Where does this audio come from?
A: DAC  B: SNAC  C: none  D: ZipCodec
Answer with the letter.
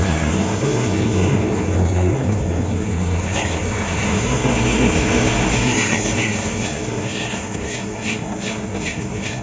B